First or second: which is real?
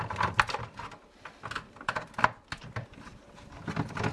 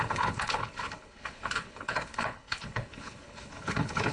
first